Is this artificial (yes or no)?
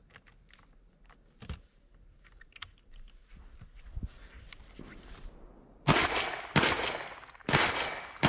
no